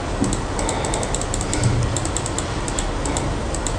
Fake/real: real